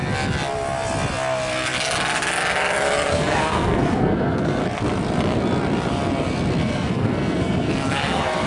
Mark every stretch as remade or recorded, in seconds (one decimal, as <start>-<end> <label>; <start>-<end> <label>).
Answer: 0.0-3.1 recorded; 3.1-4.6 remade; 4.6-6.6 recorded; 6.6-8.5 remade